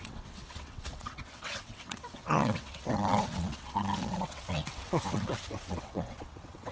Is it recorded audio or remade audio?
remade